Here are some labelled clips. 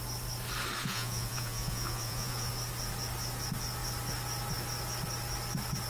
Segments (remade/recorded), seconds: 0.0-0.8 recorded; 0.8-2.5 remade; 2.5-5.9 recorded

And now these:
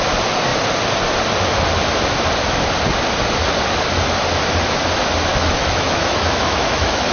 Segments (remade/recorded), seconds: 0.0-5.3 recorded; 5.3-7.1 remade

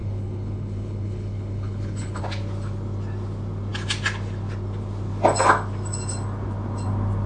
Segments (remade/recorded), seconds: 0.0-2.2 remade; 2.2-7.3 recorded

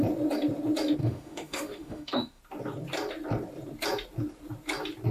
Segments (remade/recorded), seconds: 0.0-1.0 recorded; 1.0-2.4 remade; 2.4-5.1 recorded

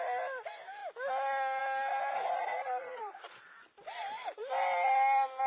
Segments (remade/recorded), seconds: 0.0-2.6 recorded; 2.6-3.4 remade; 3.4-5.5 recorded

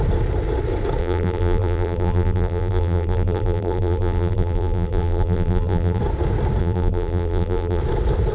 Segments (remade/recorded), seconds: 0.0-1.0 recorded; 1.0-6.0 remade; 6.0-6.6 recorded; 6.6-7.8 remade; 7.8-8.3 recorded

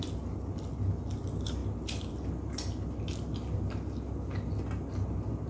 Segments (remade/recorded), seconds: 0.0-5.5 recorded

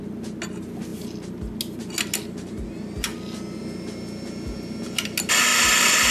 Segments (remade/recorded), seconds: 0.0-6.1 recorded